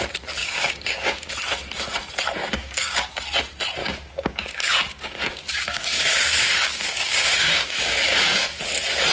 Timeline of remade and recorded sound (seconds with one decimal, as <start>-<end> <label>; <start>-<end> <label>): 0.0-0.4 recorded; 0.4-1.3 remade; 1.3-2.4 recorded; 2.4-3.2 remade; 3.2-3.8 recorded; 3.8-8.6 remade; 8.6-9.1 recorded